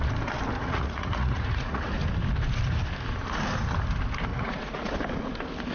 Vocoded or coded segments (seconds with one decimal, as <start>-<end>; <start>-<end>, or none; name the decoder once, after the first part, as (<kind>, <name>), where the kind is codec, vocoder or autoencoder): 0.6-1.9 (vocoder, Vocos); 4.3-4.9